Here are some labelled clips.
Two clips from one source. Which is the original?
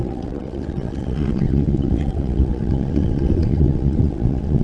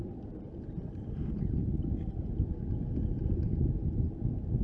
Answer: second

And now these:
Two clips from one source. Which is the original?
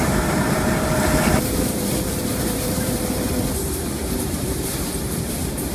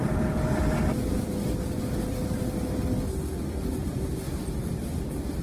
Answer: second